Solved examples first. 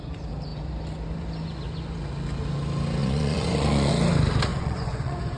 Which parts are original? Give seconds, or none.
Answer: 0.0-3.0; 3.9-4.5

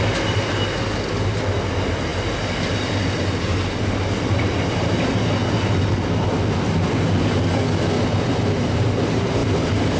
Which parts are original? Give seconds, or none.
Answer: 0.0-10.0

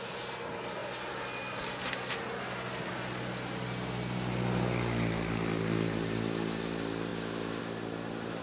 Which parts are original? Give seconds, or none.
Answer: 0.0-8.4

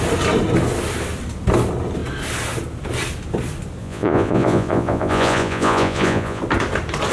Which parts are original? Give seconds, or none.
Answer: 0.0-3.8; 6.4-7.1

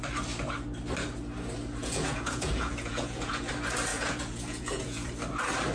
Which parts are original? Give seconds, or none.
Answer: 0.0-1.8; 3.5-3.9; 5.1-5.7

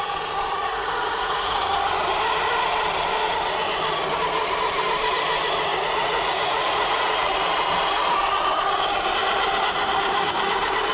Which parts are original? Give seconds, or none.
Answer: 0.0-0.7; 1.6-5.7; 7.3-10.9